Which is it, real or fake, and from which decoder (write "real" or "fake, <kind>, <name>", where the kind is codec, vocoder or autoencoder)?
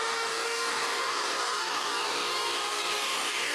fake, codec, DAC